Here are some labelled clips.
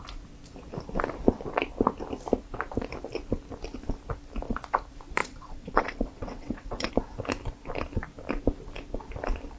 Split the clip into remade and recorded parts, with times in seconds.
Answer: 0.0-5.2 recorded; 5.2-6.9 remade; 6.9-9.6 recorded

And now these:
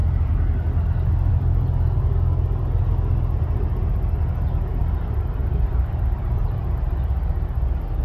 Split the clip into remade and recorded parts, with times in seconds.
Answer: 0.0-4.8 recorded; 4.8-7.3 remade; 7.3-8.0 recorded

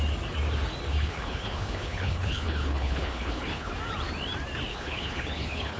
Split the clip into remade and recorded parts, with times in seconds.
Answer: 0.0-0.9 recorded; 0.9-3.7 remade; 3.7-4.7 recorded; 4.7-5.8 remade

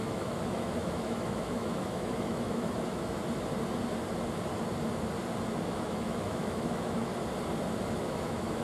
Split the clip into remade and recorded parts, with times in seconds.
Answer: 0.0-3.2 remade; 3.2-5.7 recorded; 5.7-7.1 remade; 7.1-7.9 recorded; 7.9-8.6 remade

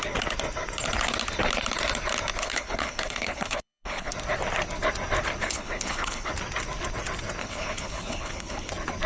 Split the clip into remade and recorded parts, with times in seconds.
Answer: 0.0-2.4 recorded; 2.4-4.1 remade; 4.1-5.4 recorded; 5.4-6.3 remade; 6.3-7.4 recorded; 7.4-8.7 remade; 8.7-9.1 recorded

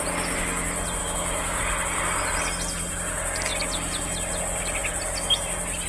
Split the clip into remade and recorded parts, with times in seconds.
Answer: 0.0-1.0 recorded; 1.0-1.6 remade; 1.6-5.9 recorded

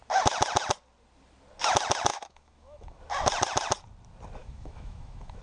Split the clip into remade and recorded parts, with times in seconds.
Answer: 0.0-2.1 recorded; 2.1-3.0 remade; 3.0-4.4 recorded; 4.4-5.4 remade

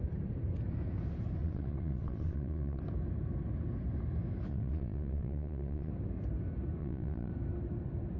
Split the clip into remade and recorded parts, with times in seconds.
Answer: 0.0-1.4 recorded; 1.4-2.8 remade; 2.8-4.5 recorded; 4.5-5.9 remade; 5.9-6.8 recorded; 6.8-7.3 remade; 7.3-8.2 recorded